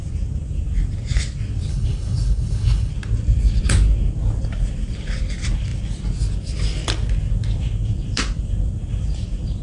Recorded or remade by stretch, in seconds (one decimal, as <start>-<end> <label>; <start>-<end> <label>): 0.0-1.7 recorded; 1.7-2.9 remade; 2.9-9.6 recorded